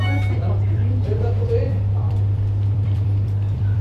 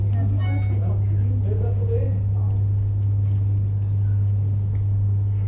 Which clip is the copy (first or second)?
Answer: first